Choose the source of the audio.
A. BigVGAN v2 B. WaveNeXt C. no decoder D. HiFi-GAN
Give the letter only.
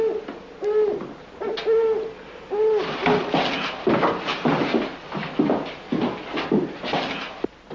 C